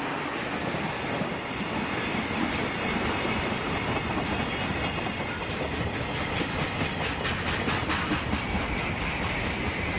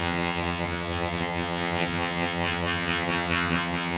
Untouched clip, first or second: first